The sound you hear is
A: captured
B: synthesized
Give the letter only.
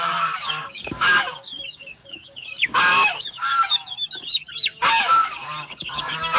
B